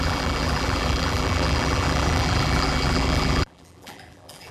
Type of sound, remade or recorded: remade